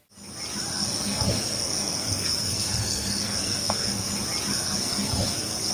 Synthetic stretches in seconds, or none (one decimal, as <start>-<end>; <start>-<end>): 0.7-4.1; 4.5-5.7